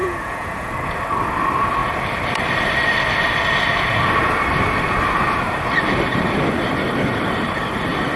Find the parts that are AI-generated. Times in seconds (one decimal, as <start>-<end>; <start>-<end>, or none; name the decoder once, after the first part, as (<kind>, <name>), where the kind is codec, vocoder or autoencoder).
0.0-0.7 (vocoder, Vocos)

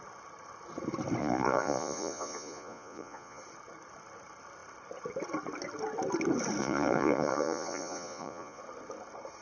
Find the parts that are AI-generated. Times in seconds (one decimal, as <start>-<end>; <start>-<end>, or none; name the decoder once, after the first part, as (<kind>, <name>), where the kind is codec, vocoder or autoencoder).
1.2-3.4 (vocoder, Vocos); 6.6-8.6

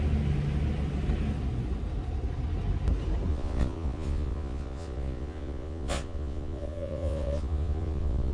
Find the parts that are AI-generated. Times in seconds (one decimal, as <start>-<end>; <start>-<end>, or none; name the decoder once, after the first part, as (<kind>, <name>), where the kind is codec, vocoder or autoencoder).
3.3-8.3 (vocoder, Vocos)

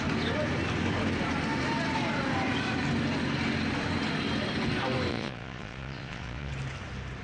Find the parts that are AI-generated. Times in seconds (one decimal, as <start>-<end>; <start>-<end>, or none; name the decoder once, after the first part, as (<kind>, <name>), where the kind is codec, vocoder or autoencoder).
5.1-6.5 (vocoder, Vocos)

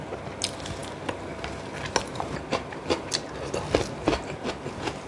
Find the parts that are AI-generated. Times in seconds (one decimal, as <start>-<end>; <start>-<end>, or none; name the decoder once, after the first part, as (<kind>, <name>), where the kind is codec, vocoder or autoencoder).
none

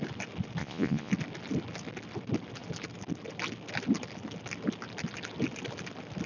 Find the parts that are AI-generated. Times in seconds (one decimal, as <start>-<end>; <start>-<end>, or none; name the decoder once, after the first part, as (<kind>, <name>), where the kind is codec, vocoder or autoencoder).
0.6-1.1 (vocoder, Vocos)